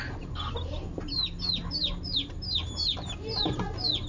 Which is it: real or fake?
real